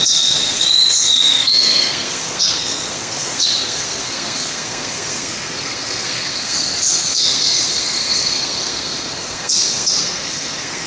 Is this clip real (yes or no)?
no